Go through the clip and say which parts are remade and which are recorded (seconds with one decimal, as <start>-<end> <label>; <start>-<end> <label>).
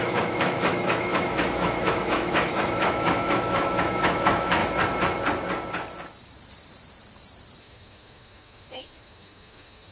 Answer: 0.0-4.6 remade; 4.6-7.6 recorded; 7.6-9.9 remade